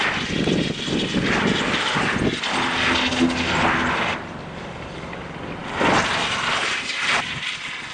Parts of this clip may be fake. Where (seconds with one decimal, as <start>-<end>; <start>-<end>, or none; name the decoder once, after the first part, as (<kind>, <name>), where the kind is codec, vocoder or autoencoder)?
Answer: none

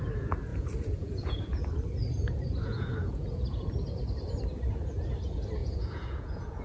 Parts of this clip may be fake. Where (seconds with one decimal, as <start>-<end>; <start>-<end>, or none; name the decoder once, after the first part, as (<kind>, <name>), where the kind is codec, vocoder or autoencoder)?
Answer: 0.5-1.6 (vocoder, Vocos); 2.7-3.7; 5.6-6.6

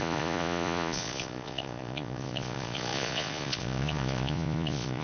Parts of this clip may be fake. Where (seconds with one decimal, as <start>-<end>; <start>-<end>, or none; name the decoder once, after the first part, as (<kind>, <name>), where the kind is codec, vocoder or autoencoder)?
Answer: 0.0-5.0 (vocoder, Vocos)